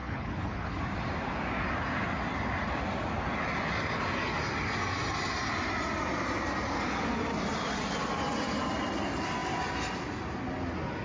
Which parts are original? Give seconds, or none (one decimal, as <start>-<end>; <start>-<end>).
0.8-11.0